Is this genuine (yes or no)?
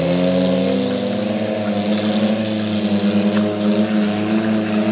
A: yes